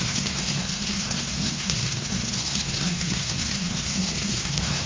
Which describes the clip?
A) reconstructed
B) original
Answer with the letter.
A